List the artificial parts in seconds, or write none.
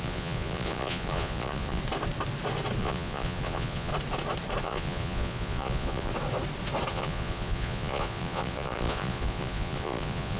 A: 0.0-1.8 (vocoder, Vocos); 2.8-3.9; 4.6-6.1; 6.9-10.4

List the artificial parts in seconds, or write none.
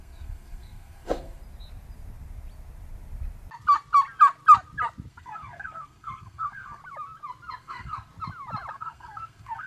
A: 0.0-1.4 (codec, SNAC); 5.1-6.8; 7.6-8.1; 8.7-9.7